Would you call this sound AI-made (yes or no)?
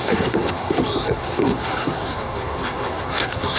yes